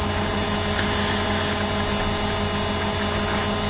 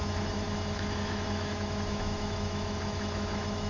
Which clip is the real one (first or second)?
first